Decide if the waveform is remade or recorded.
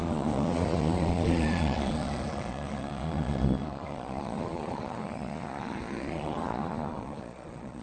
remade